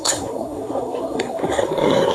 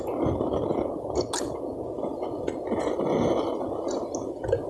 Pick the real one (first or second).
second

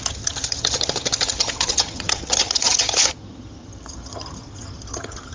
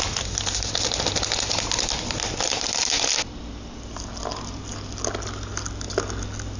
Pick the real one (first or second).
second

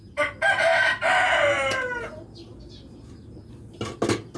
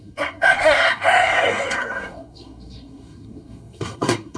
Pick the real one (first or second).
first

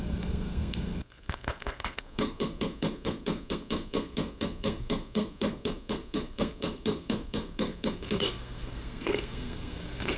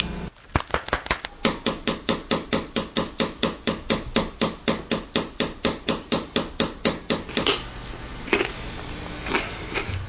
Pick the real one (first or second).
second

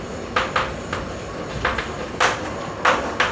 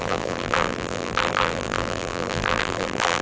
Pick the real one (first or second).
first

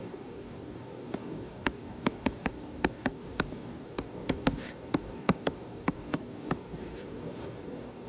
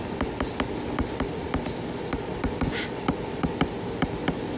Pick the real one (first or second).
second